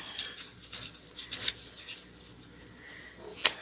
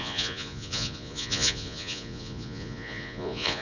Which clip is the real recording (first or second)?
first